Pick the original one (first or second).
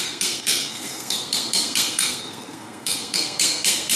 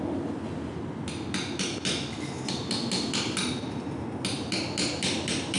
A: second